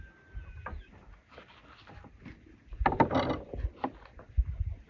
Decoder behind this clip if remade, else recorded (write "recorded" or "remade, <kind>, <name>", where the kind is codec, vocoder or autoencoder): recorded